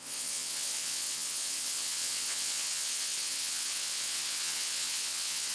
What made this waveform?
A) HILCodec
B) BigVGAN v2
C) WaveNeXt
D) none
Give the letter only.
C